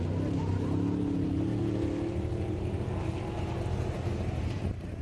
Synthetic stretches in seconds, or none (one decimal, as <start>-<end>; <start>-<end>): none